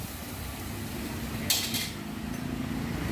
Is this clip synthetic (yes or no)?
no